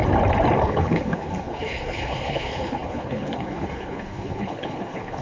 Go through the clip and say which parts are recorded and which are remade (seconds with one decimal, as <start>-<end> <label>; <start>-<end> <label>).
0.0-0.6 recorded; 0.6-5.2 remade